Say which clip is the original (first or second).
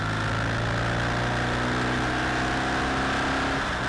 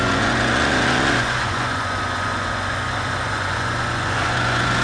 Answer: first